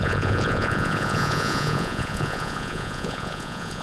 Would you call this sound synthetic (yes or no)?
yes